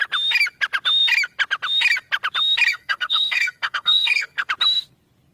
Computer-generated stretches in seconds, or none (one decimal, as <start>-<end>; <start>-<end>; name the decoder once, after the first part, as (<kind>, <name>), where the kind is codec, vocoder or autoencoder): 2.7-4.5 (codec, SNAC)